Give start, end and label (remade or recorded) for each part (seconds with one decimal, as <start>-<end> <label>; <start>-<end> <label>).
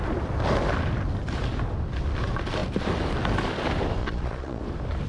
0.0-4.0 recorded; 4.0-4.6 remade; 4.6-5.1 recorded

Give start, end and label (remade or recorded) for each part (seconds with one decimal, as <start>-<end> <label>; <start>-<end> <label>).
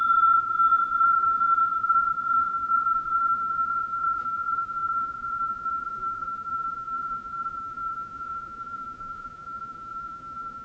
0.0-10.6 remade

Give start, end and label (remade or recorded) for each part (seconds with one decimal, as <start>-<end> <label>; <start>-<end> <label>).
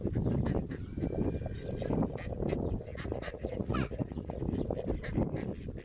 0.0-2.9 recorded; 2.9-4.4 remade; 4.4-5.8 recorded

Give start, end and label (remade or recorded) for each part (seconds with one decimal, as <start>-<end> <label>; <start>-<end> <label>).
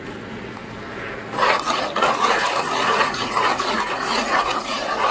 0.0-5.1 remade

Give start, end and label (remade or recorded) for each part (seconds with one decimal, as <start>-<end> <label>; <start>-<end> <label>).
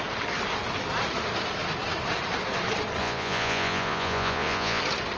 0.0-3.0 recorded; 3.0-4.8 remade; 4.8-5.2 recorded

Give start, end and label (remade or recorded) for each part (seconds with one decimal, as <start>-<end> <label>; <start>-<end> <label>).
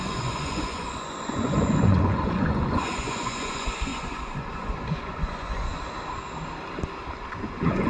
0.0-5.7 remade; 5.7-7.3 recorded; 7.3-7.9 remade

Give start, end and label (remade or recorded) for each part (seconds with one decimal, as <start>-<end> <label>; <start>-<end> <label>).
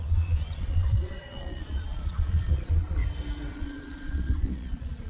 0.0-3.0 remade; 3.0-3.5 recorded; 3.5-5.1 remade